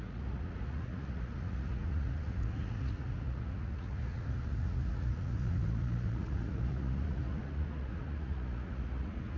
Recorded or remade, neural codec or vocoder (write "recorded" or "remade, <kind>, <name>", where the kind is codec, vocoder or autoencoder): remade, vocoder, Vocos